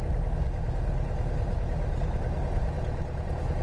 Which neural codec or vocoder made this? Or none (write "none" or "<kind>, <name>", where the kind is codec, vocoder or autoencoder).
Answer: none